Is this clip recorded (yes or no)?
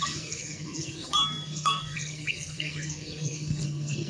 no